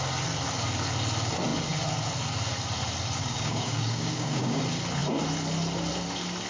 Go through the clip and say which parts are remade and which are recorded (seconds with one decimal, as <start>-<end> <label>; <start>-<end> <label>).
0.0-3.2 recorded; 3.2-4.6 remade; 4.6-6.5 recorded

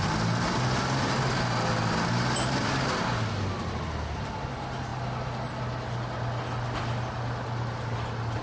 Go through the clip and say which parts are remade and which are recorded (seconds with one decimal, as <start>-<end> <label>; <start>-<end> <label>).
0.0-8.4 recorded

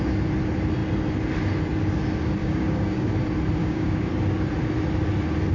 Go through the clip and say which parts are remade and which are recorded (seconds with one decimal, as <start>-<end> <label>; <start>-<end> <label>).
0.0-2.4 recorded; 2.4-3.1 remade; 3.1-3.6 recorded; 3.6-4.1 remade; 4.1-5.5 recorded

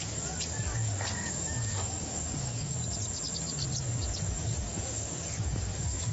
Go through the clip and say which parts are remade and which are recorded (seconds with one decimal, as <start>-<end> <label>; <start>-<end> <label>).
0.0-2.8 remade; 2.8-4.3 recorded; 4.3-6.1 remade

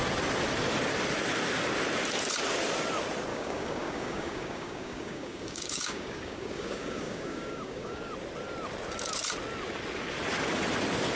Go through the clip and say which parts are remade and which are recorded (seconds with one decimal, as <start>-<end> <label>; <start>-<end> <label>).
0.0-3.3 recorded; 3.3-8.1 remade; 8.1-11.2 recorded

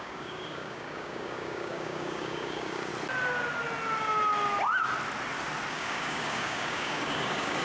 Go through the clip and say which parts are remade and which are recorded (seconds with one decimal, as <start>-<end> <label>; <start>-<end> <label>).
0.0-2.9 remade; 2.9-5.7 recorded; 5.7-7.6 remade

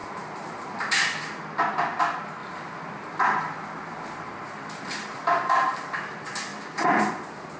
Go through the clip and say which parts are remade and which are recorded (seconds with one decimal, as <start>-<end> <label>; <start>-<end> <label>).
0.0-7.6 recorded